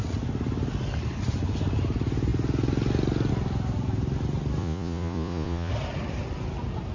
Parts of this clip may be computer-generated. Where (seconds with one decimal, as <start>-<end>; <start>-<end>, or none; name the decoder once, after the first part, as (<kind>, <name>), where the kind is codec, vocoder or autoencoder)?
4.6-5.7 (vocoder, Vocos)

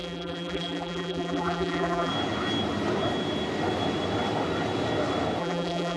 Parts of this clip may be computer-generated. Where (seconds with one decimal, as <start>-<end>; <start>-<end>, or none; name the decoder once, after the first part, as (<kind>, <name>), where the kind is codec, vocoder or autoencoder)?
0.0-2.1 (vocoder, BigVGAN v2); 5.4-6.0

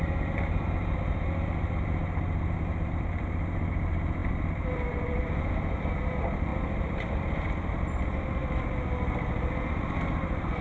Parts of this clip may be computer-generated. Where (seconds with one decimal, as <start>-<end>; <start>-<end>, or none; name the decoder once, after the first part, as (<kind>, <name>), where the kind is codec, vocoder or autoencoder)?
0.0-2.0 (vocoder, BigVGAN v2); 2.6-10.6

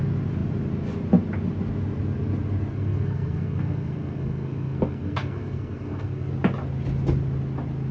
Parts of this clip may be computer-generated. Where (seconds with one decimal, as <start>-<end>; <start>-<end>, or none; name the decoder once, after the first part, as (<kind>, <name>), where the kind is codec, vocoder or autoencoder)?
2.7-6.3 (codec, SNAC)

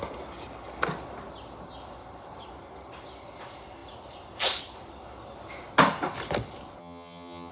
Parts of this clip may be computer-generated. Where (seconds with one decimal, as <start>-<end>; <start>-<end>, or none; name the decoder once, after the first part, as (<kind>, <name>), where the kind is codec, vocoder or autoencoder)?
6.8-7.5 (vocoder, HiFi-GAN)